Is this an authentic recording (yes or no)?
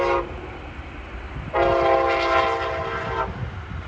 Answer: yes